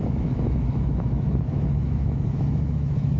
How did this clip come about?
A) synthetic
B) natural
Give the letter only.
A